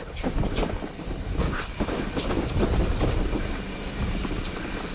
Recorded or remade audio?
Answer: recorded